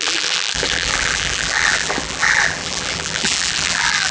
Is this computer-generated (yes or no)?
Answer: yes